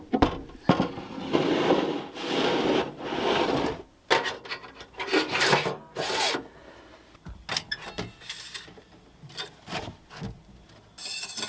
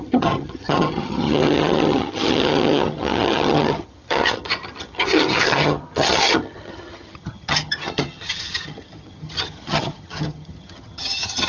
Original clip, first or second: first